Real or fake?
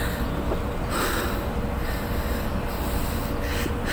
real